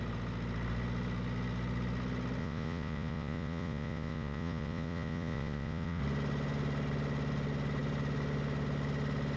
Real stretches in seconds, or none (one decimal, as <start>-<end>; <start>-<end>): 0.0-2.4; 6.0-9.4

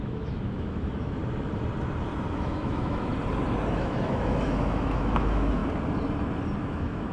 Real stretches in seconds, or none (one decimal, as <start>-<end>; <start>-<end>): 1.2-2.3; 3.1-3.7; 5.6-6.6

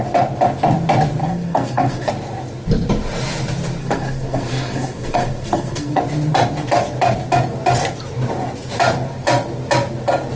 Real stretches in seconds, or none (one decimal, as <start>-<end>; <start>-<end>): 0.0-1.2; 2.1-3.8; 6.0-10.4

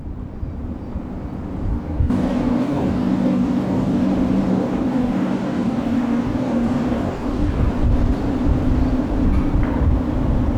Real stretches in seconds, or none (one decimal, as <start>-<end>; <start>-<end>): 0.0-1.7; 4.1-4.5; 7.7-10.6

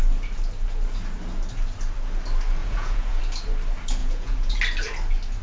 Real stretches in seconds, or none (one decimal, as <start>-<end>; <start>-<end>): 0.0-2.6; 3.2-4.0; 4.6-5.4

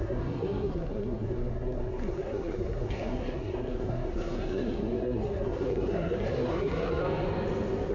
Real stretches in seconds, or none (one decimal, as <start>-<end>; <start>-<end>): 7.0-7.9

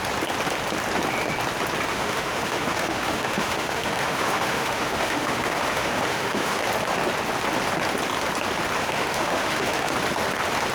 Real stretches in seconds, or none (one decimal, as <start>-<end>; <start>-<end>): 0.0-1.9; 6.6-8.8; 9.9-10.7